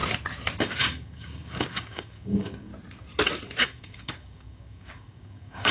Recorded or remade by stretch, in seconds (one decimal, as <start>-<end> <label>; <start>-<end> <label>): 0.0-0.6 recorded; 0.6-2.7 remade; 2.7-3.6 recorded; 3.6-5.7 remade